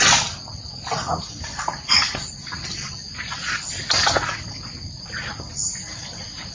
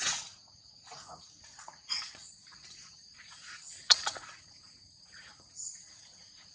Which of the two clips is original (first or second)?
first